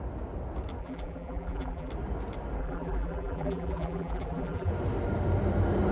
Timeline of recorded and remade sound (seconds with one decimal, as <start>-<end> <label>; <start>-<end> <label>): 0.0-0.8 recorded; 0.8-1.9 remade; 1.9-2.6 recorded; 2.6-4.7 remade; 4.7-5.9 recorded